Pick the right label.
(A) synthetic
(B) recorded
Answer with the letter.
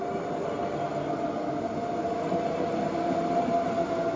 B